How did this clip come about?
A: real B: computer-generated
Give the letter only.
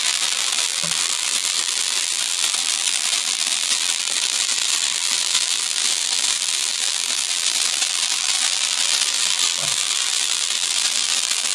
B